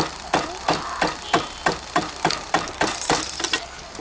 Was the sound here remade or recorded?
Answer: recorded